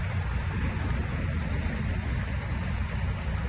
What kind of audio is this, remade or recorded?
recorded